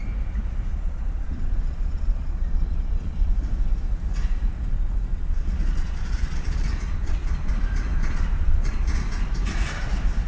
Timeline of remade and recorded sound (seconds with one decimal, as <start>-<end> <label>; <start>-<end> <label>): 0.0-0.7 recorded; 0.7-3.3 remade; 3.3-5.1 recorded; 5.1-7.5 remade; 7.5-7.9 recorded; 7.9-9.0 remade; 9.0-10.3 recorded